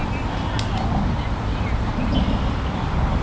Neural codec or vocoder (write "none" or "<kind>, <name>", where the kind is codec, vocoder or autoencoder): none